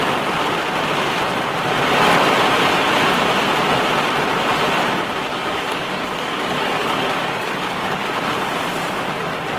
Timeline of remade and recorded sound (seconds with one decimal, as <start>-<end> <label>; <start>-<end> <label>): 0.0-5.3 recorded; 5.3-8.1 remade; 8.1-9.6 recorded

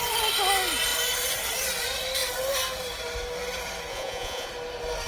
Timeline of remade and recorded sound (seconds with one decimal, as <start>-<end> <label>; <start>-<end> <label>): 0.0-3.9 recorded; 3.9-4.5 remade; 4.5-5.1 recorded

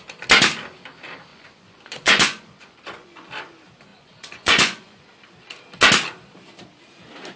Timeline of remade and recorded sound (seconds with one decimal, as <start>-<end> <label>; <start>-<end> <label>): 0.0-1.3 recorded; 1.3-3.3 remade; 3.3-3.9 recorded; 3.9-5.1 remade; 5.1-7.4 recorded

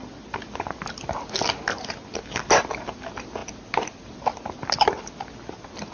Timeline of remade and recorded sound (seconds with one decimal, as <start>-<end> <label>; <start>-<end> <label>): 0.0-5.9 recorded

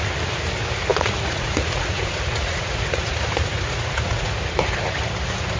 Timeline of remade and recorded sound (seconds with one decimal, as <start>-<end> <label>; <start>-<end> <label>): 0.0-0.9 recorded; 0.9-4.3 remade; 4.3-5.6 recorded

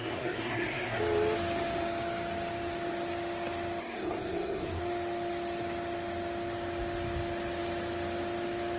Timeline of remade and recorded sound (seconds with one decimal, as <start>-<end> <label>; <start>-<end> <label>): 0.0-1.0 remade; 1.0-3.8 recorded; 3.8-4.8 remade; 4.8-8.8 recorded

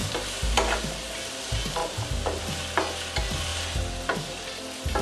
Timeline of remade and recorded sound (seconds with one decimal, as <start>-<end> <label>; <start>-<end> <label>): 0.0-1.4 remade; 1.4-1.8 recorded; 1.8-2.4 remade; 2.4-5.0 recorded

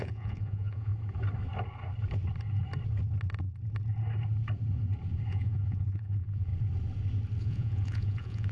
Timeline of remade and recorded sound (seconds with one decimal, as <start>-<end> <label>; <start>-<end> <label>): 0.0-0.9 remade; 0.9-5.3 recorded; 5.3-6.5 remade; 6.5-7.4 recorded; 7.4-8.5 remade